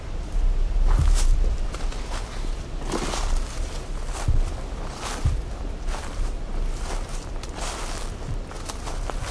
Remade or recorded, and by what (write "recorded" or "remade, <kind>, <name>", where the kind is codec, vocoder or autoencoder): recorded